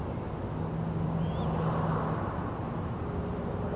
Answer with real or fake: real